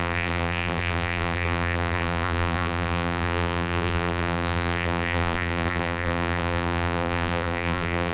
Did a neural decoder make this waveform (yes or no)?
yes